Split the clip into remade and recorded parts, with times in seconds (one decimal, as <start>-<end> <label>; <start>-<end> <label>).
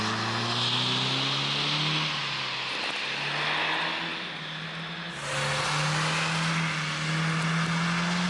0.0-8.3 recorded